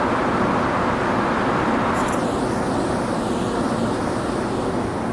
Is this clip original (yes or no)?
yes